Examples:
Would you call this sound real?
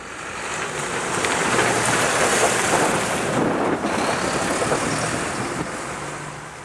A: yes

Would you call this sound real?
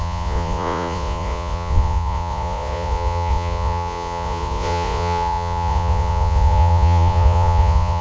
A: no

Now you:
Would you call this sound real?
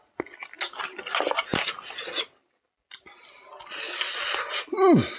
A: yes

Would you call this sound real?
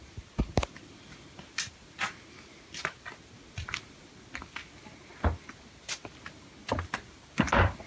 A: yes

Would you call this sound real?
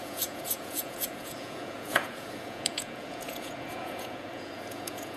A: no